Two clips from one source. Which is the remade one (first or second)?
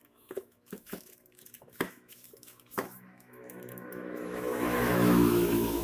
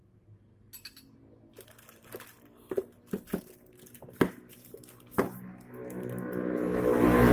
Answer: first